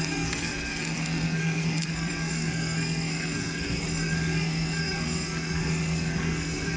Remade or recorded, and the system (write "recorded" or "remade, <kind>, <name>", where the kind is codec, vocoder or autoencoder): remade, codec, SNAC